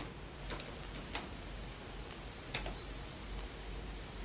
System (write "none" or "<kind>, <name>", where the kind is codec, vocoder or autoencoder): none